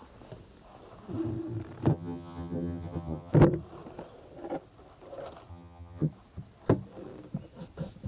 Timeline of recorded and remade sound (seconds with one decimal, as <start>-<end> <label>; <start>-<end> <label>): 0.0-1.9 recorded; 1.9-3.3 remade; 3.3-5.5 recorded; 5.5-6.1 remade; 6.1-8.1 recorded